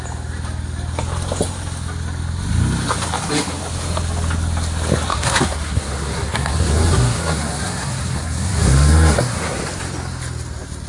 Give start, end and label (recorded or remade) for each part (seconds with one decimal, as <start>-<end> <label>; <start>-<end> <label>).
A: 0.0-5.1 recorded; 5.1-9.6 remade; 9.6-10.9 recorded